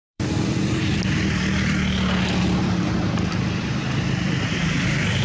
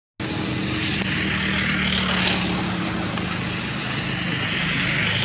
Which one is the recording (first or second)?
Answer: second